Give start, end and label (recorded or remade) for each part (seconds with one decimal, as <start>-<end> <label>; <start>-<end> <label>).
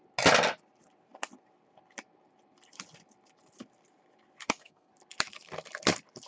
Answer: 0.0-4.4 recorded; 4.4-4.9 remade; 4.9-6.3 recorded